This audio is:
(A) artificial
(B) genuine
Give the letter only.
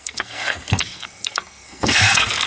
A